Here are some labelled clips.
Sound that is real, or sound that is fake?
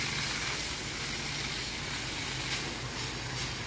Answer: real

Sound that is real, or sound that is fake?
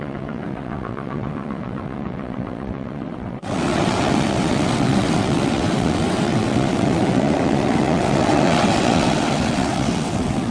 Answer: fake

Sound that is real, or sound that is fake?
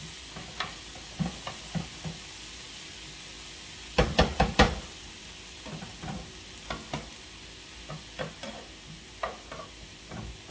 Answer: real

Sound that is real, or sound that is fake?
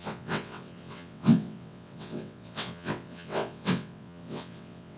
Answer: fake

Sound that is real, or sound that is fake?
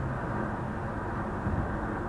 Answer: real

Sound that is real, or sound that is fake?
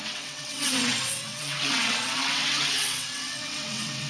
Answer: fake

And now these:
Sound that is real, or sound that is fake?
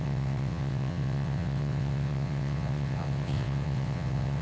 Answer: fake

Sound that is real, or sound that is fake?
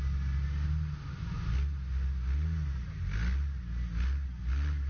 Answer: real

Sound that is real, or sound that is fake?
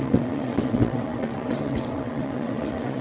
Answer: fake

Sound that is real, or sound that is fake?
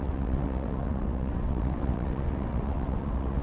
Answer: fake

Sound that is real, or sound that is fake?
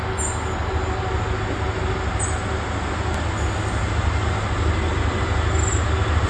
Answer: real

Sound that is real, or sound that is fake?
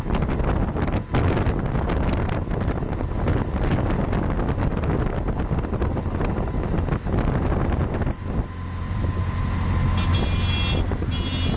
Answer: real